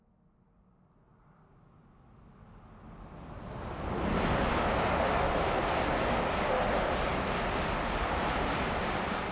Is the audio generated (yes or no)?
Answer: no